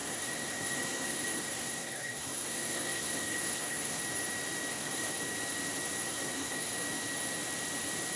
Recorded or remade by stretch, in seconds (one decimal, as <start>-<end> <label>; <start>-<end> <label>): 0.0-4.0 remade; 4.0-4.7 recorded; 4.7-5.2 remade; 5.2-6.0 recorded; 6.0-6.7 remade; 6.7-8.2 recorded